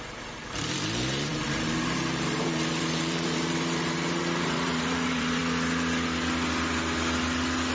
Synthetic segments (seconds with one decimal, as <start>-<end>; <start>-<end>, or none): 1.3-5.4